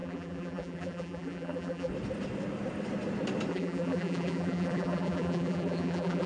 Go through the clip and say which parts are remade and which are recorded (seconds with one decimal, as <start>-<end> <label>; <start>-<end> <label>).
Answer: 0.0-1.9 remade; 1.9-3.5 recorded; 3.5-6.3 remade